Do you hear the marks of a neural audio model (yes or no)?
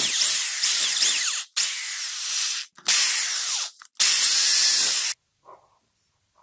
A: no